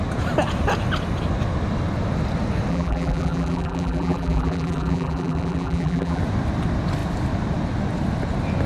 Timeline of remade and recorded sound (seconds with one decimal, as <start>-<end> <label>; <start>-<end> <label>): 0.0-2.7 recorded; 2.7-6.2 remade; 6.2-8.7 recorded